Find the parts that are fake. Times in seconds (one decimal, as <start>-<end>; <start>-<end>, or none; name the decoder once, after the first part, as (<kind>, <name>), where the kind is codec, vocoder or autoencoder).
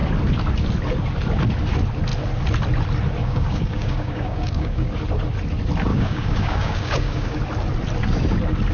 3.2-4.9 (codec, DAC); 5.9-7.4